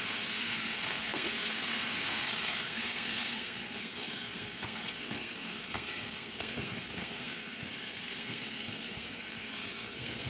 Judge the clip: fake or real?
fake